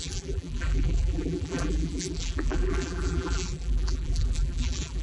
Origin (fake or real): fake